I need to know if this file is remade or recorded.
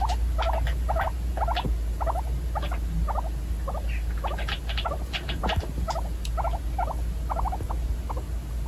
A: recorded